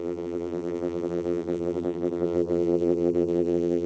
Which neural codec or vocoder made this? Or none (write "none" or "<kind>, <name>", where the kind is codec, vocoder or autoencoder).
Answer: vocoder, BigVGAN v2